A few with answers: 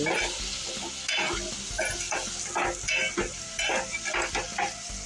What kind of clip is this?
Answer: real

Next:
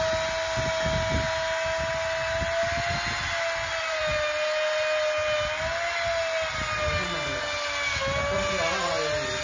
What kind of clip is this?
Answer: real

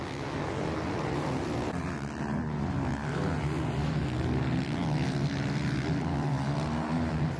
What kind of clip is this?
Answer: real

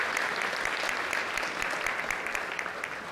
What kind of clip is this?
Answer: real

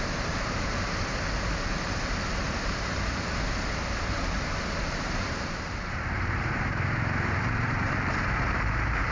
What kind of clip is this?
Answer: fake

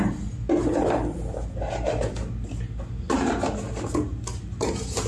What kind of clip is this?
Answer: real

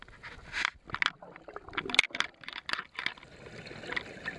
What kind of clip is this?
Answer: real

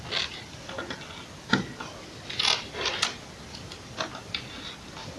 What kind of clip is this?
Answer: real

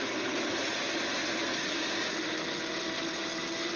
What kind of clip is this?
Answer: real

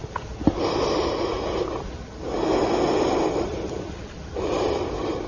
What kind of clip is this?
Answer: real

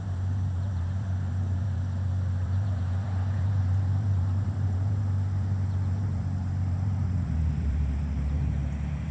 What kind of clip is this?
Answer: fake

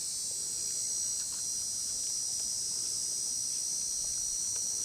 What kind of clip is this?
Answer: real